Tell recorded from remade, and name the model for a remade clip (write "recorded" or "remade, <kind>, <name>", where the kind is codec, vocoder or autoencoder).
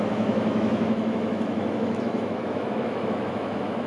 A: remade, autoencoder, DAC-VAE